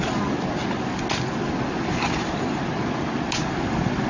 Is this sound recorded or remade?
recorded